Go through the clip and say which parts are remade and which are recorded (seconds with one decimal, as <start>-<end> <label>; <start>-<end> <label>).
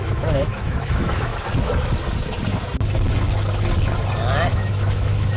0.0-1.3 remade; 1.3-4.5 recorded; 4.5-5.4 remade